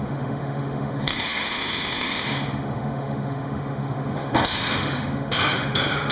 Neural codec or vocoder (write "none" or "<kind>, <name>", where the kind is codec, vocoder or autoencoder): autoencoder, DAC-VAE